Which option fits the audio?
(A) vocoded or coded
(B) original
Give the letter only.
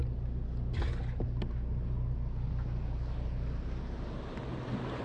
B